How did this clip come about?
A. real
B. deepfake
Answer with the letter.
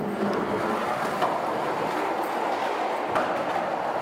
A